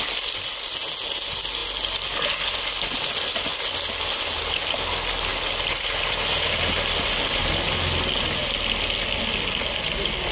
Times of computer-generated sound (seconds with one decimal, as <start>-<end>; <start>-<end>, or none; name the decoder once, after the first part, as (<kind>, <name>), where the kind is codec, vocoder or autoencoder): none